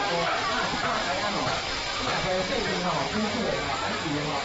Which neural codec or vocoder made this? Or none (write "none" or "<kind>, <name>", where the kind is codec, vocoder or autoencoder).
none